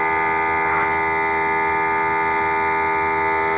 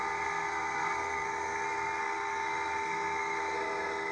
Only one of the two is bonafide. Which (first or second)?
first